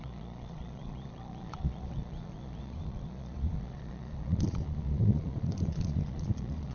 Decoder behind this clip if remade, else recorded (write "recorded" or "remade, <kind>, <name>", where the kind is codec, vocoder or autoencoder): remade, vocoder, Vocos